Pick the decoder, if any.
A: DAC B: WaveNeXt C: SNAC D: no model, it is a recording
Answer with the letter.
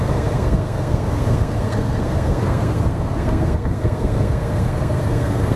C